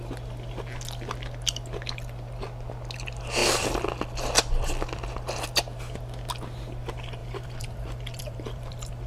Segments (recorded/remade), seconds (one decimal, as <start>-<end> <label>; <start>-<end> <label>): 0.0-7.2 recorded; 7.2-9.1 remade